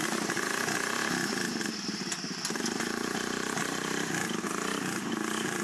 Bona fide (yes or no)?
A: yes